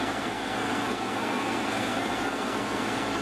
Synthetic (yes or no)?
yes